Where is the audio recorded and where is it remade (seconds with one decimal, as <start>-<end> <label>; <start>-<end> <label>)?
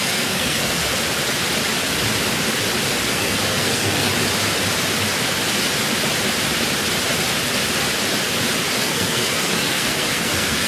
0.0-0.8 remade; 0.8-3.1 recorded; 3.1-4.1 remade; 4.1-8.8 recorded; 8.8-10.7 remade